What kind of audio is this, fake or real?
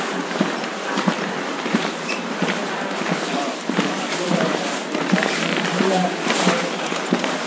fake